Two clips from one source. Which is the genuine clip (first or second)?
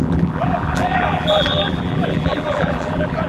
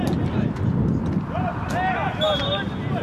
second